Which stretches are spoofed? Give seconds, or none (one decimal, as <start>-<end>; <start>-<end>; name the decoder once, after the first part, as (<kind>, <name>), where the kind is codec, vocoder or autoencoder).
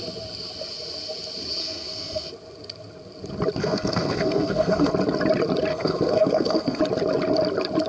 1.6-2.3 (codec, SNAC); 3.6-4.9; 5.7-6.8